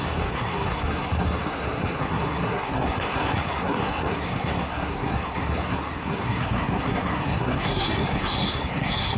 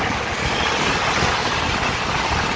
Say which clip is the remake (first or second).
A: first